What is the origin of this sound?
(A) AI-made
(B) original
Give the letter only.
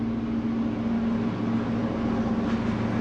B